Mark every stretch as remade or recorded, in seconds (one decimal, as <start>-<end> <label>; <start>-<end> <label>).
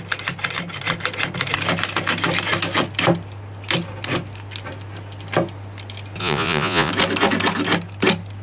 0.0-6.2 recorded; 6.2-6.9 remade; 6.9-8.4 recorded